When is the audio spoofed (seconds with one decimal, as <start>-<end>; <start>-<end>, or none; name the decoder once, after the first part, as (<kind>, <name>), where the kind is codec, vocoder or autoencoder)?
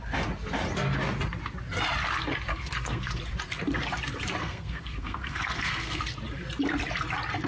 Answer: 2.5-3.2 (codec, SNAC); 4.4-6.0